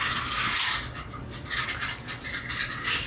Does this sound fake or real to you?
real